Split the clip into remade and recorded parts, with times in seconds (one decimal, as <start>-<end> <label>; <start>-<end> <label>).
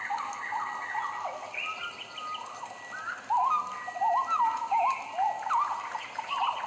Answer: 0.0-6.7 recorded